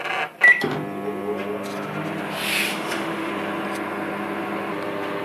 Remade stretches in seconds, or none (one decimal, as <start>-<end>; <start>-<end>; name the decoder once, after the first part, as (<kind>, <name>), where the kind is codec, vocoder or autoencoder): 2.7-3.3 (autoencoder, DAC-VAE)